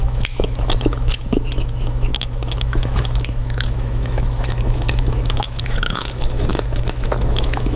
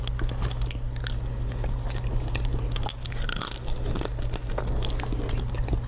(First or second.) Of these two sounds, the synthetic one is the first